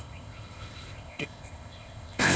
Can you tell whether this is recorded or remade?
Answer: remade